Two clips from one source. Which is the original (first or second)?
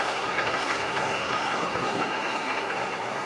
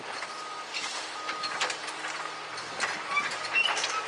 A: second